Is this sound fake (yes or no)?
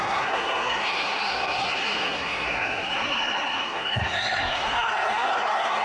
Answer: yes